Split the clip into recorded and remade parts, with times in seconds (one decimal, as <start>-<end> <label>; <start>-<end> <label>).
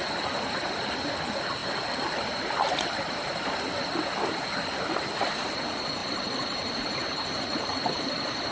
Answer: 0.0-6.0 recorded; 6.0-8.5 remade